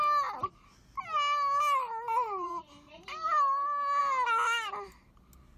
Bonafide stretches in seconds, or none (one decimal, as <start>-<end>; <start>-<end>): 0.0-1.9; 2.9-5.6